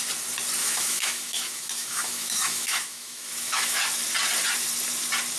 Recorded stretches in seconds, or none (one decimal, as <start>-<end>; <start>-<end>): 0.0-0.6; 3.8-5.4